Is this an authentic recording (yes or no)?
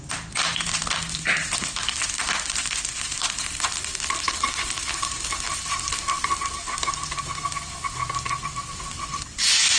yes